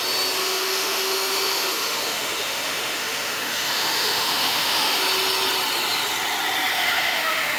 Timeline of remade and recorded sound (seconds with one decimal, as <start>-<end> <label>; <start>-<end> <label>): 0.0-0.4 recorded; 0.4-5.0 remade; 5.0-6.7 recorded; 6.7-7.6 remade